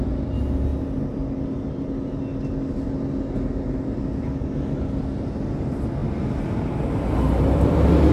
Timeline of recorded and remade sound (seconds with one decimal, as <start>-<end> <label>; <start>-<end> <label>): 0.0-4.0 recorded; 4.0-4.5 remade; 4.5-8.1 recorded